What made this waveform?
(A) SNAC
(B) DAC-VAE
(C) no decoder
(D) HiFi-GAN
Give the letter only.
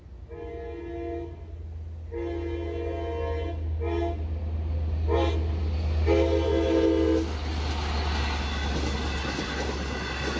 C